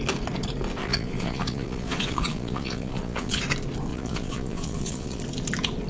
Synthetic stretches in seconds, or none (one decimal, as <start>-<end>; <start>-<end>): 0.8-3.4; 3.9-5.2